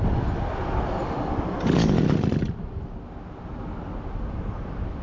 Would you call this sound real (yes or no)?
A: yes